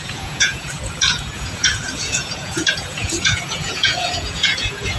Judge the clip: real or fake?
fake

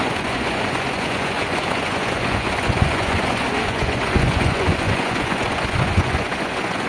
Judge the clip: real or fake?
fake